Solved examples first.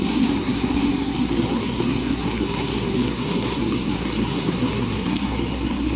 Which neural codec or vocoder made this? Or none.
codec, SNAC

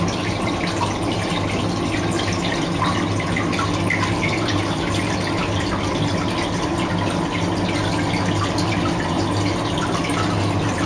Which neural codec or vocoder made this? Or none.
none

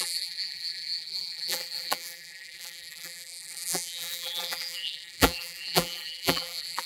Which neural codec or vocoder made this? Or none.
vocoder, BigVGAN v2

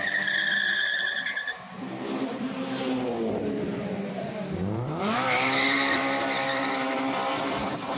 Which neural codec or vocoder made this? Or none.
vocoder, BigVGAN v2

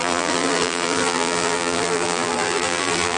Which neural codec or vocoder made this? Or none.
vocoder, BigVGAN v2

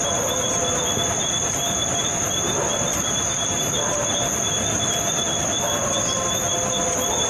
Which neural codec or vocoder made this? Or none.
none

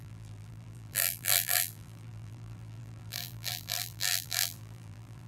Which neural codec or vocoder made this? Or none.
vocoder, BigVGAN v2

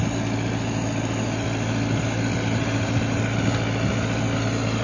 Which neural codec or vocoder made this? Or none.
none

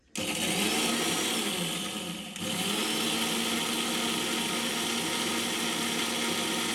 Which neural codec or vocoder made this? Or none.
none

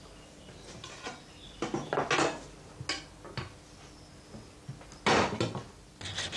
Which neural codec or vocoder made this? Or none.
none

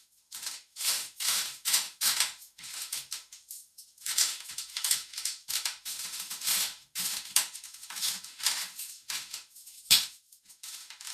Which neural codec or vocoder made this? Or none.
autoencoder, DAC-VAE